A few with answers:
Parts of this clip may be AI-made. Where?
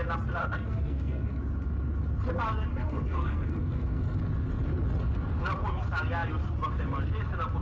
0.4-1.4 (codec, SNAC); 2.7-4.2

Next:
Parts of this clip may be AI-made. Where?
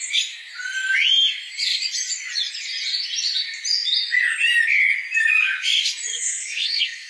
6.1-7.1 (codec, SNAC)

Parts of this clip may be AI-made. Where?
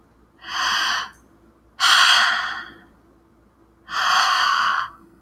4.2-5.2 (codec, SNAC)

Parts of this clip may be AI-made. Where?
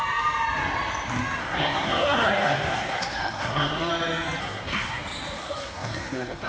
1.4-3.9 (codec, SNAC); 4.4-5.0; 5.4-6.5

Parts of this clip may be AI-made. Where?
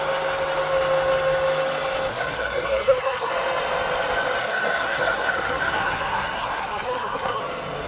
2.1-3.3 (codec, SNAC); 4.4-7.4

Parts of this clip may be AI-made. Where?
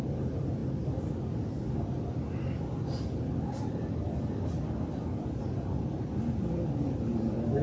none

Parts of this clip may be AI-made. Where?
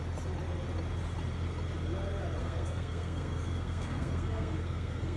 2.4-5.2 (codec, SNAC)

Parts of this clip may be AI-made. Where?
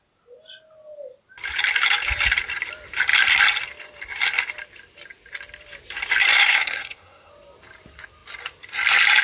6.3-7.3 (codec, SNAC)